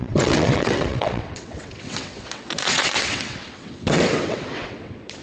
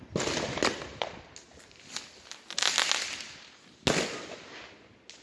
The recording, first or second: second